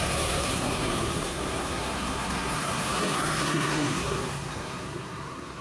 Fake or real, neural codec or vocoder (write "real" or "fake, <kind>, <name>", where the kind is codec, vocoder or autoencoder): fake, codec, SNAC